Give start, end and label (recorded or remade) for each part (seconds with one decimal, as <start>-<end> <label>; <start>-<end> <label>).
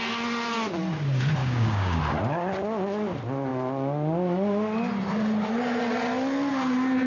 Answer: 0.0-1.4 recorded; 1.4-2.0 remade; 2.0-7.1 recorded